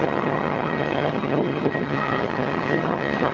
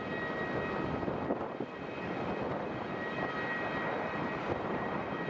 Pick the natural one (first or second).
second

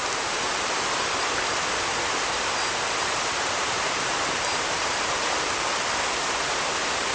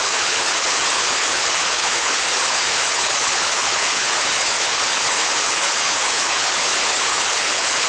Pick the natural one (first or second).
first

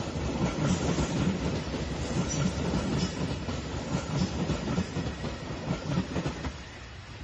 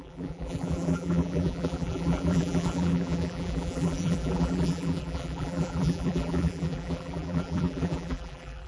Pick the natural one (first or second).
first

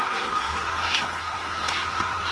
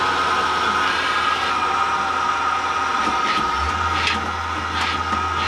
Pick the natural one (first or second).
second